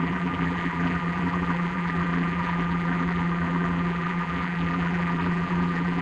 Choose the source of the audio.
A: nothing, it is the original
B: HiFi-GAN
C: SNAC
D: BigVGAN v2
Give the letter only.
D